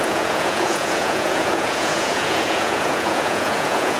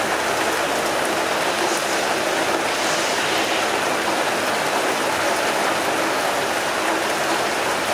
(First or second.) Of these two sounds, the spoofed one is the first